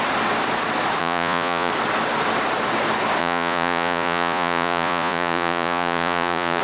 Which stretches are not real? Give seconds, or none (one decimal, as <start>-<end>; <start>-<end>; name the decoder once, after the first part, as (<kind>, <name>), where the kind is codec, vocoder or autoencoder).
1.0-1.7 (vocoder, Vocos); 3.2-6.6

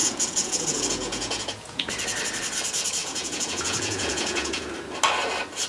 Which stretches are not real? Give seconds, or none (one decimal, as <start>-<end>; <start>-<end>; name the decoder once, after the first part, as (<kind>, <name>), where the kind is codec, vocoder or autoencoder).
0.0-1.9 (vocoder, Vocos); 3.0-4.7

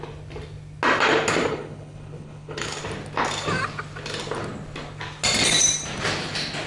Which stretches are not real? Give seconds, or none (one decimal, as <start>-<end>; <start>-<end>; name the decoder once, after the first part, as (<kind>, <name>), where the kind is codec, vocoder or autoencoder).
1.5-2.8 (codec, HILCodec)

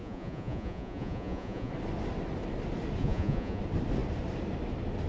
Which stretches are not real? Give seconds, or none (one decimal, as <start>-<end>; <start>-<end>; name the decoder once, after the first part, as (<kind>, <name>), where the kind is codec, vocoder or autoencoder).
0.0-1.7 (vocoder, Vocos); 3.0-3.6

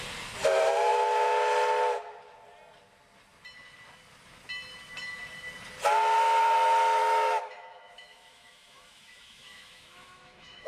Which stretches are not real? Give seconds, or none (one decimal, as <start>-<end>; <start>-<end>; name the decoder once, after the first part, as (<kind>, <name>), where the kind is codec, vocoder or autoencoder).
7.0-10.7 (autoencoder, DAC-VAE)

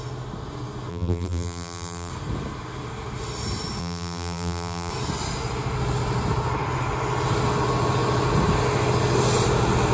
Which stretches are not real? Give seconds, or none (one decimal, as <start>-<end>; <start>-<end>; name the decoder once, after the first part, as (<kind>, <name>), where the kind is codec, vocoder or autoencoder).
0.9-2.1 (vocoder, BigVGAN v2); 3.8-4.9

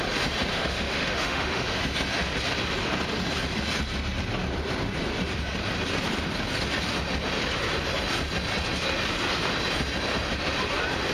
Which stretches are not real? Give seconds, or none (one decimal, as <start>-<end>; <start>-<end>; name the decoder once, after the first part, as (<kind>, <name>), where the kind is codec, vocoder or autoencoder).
0.5-1.8 (autoencoder, DAC-VAE)

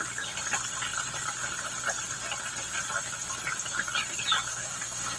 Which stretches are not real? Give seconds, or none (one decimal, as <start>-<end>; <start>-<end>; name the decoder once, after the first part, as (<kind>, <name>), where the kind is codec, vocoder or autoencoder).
4.5-5.2 (codec, SNAC)